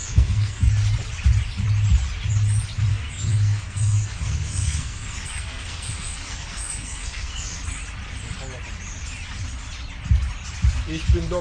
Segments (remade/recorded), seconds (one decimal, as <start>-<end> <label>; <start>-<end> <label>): 0.0-0.7 remade; 0.7-2.9 recorded; 2.9-7.6 remade; 7.6-11.4 recorded